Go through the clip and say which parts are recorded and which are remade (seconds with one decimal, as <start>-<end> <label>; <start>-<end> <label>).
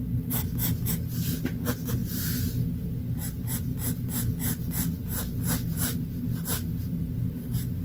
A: 0.0-7.8 recorded